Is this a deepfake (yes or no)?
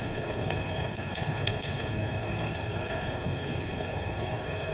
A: yes